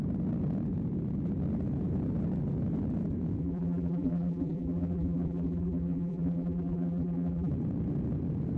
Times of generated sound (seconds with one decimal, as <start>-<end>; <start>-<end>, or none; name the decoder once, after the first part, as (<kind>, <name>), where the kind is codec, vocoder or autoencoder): 3.4-7.5 (vocoder, BigVGAN v2)